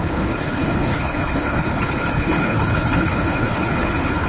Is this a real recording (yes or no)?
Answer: no